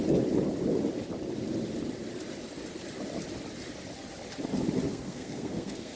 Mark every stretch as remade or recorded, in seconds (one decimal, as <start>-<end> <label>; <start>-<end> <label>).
0.0-4.9 recorded; 4.9-6.0 remade

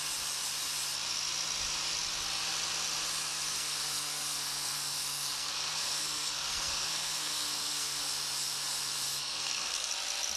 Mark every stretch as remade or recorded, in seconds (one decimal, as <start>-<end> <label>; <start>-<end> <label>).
0.0-3.3 recorded; 3.3-8.1 remade; 8.1-9.2 recorded; 9.2-9.9 remade; 9.9-10.4 recorded

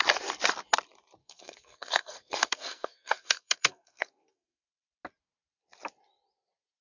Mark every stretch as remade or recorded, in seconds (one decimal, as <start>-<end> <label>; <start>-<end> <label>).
0.0-1.2 recorded; 1.2-4.7 remade; 4.7-6.8 recorded

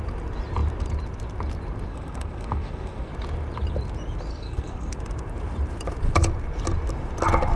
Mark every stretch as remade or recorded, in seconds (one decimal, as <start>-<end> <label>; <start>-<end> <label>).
0.0-1.9 recorded; 1.9-3.1 remade; 3.1-4.3 recorded; 4.3-4.9 remade; 4.9-7.6 recorded

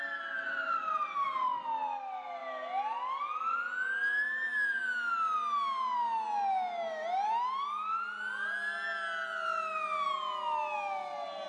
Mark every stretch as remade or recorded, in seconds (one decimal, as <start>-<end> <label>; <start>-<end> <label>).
0.0-11.5 recorded

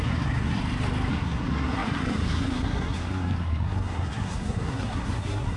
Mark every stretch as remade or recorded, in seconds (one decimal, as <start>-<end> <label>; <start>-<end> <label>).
0.0-0.6 remade; 0.6-1.1 recorded; 1.1-5.6 remade